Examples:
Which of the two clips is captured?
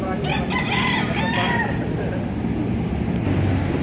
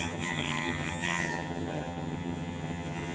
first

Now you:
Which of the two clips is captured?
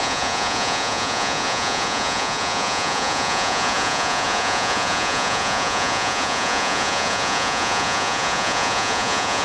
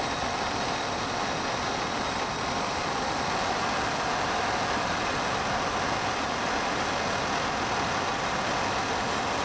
second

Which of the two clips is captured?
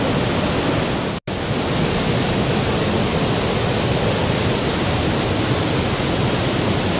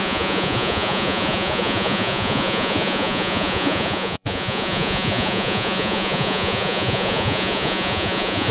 first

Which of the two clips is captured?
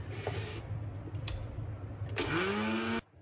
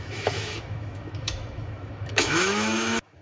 first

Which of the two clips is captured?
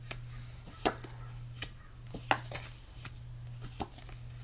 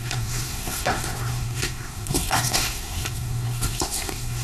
first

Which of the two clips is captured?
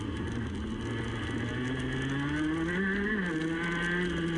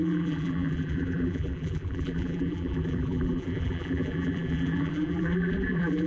first